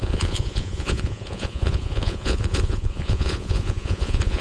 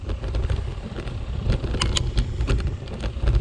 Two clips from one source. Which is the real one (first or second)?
second